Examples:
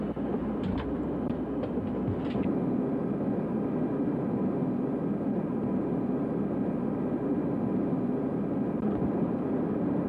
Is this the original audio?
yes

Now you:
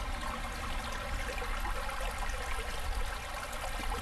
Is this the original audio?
yes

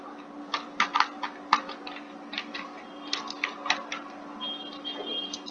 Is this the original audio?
yes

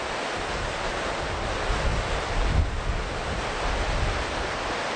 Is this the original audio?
yes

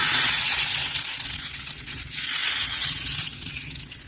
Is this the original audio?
no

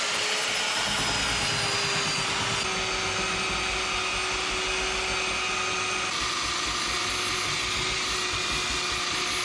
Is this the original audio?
yes